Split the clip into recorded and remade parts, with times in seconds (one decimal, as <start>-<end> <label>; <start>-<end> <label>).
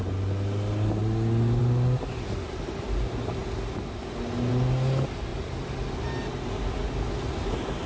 0.0-7.9 recorded